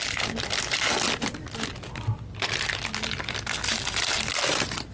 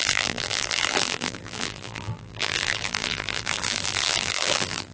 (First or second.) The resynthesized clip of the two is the second